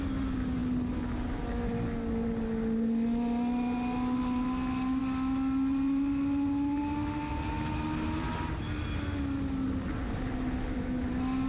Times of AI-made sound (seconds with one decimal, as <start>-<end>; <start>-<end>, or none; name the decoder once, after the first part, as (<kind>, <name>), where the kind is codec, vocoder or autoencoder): none